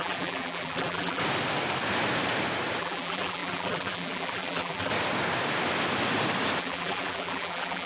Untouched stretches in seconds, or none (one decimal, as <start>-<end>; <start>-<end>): 1.2-2.8; 4.9-6.6